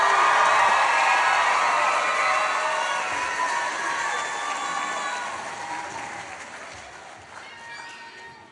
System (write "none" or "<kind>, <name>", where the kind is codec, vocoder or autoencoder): none